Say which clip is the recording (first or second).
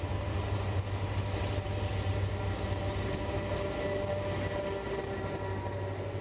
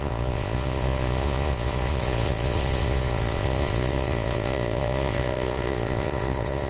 first